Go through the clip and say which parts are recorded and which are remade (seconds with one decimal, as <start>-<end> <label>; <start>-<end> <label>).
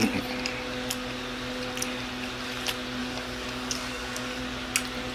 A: 0.0-3.0 recorded; 3.0-4.4 remade; 4.4-5.1 recorded